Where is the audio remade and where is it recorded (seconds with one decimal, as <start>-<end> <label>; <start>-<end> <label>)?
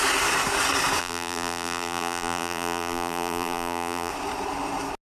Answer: 0.0-1.0 recorded; 1.0-4.1 remade; 4.1-5.2 recorded